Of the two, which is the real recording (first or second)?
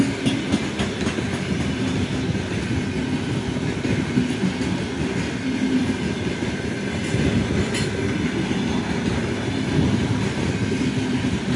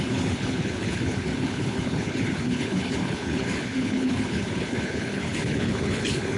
first